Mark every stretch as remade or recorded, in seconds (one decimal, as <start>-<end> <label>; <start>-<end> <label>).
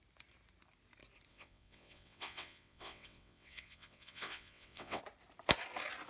0.0-1.3 recorded; 1.3-5.0 remade; 5.0-6.1 recorded